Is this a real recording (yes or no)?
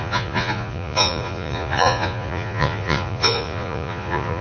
no